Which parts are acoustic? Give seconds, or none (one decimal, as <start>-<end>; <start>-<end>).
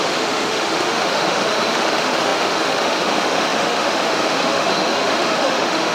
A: none